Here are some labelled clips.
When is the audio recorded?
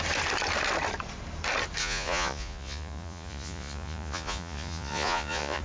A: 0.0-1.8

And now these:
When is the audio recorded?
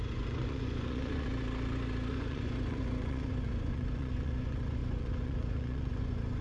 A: 1.3-2.1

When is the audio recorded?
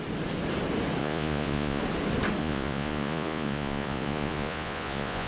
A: 0.0-1.0; 1.8-2.4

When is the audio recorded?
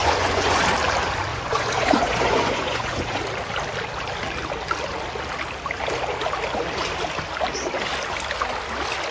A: 0.6-1.3; 3.2-9.1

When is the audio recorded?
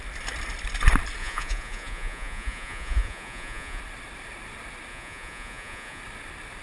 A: 0.0-1.2; 3.8-4.9; 6.0-6.6